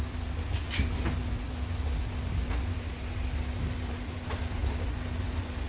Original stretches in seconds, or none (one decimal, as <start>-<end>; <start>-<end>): 0.0-5.7